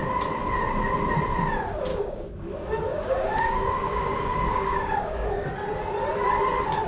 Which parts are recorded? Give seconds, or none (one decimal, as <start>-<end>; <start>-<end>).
0.0-1.9; 5.5-6.9